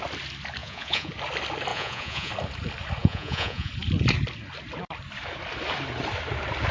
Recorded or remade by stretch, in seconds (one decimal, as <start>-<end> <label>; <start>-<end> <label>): 0.0-0.6 recorded; 0.6-1.1 remade; 1.1-1.7 recorded; 1.7-2.3 remade; 2.3-3.0 recorded; 3.0-3.7 remade; 3.7-6.7 recorded